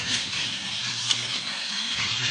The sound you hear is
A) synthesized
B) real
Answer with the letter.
A